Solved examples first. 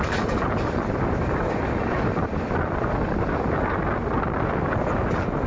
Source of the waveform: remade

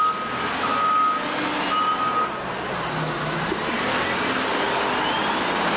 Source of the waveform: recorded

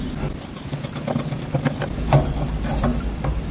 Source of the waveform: recorded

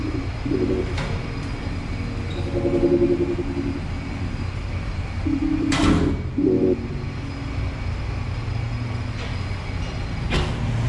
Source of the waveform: recorded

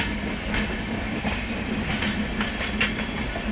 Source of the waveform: recorded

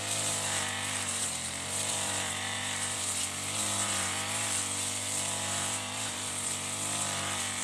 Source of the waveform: remade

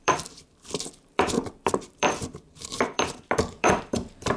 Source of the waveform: remade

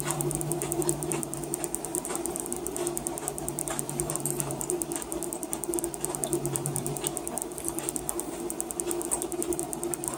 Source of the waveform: remade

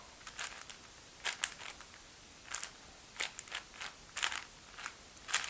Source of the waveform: remade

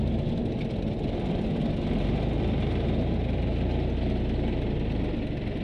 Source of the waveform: recorded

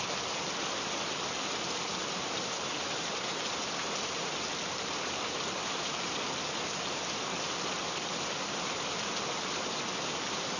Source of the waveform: remade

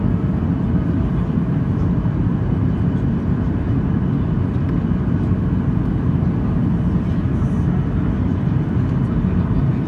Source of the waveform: recorded